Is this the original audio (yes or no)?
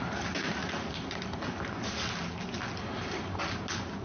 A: yes